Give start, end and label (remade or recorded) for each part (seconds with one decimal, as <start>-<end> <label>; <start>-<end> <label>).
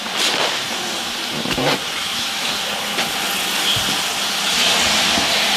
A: 0.0-2.0 recorded; 2.0-2.5 remade; 2.5-5.6 recorded